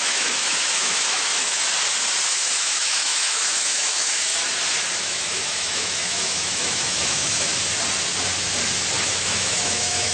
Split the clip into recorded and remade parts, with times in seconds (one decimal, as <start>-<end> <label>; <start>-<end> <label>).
0.0-1.7 remade; 1.7-2.3 recorded; 2.3-4.3 remade; 4.3-5.0 recorded; 5.0-7.5 remade; 7.5-9.0 recorded; 9.0-10.1 remade